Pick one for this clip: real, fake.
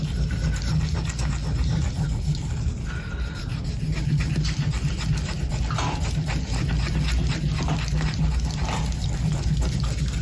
real